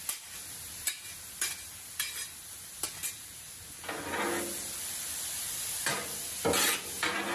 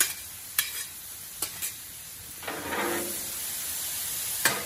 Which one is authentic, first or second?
first